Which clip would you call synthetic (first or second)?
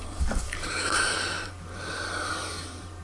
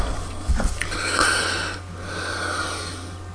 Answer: first